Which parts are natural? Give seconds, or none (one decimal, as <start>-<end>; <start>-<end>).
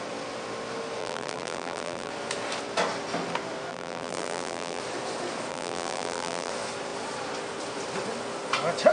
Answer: 0.0-1.0; 2.1-3.7; 4.8-5.5; 6.5-8.9